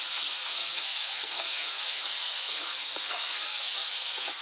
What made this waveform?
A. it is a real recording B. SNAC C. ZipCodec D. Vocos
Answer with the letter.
B